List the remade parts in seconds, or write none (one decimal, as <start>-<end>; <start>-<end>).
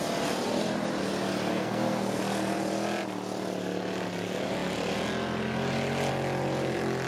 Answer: 1.5-2.2